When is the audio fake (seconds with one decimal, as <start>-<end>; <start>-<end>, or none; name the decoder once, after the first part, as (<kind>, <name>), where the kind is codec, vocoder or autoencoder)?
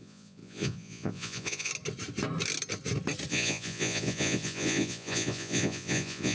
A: 0.0-1.7 (vocoder, Vocos); 3.3-6.3